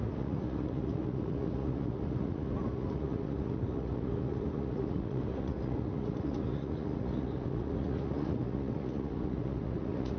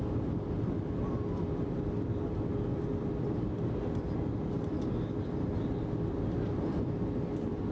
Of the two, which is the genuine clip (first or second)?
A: second